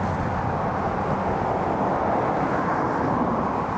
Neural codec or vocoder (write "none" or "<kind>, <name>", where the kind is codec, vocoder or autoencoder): none